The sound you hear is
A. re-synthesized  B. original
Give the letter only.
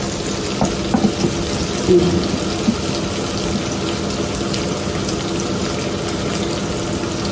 B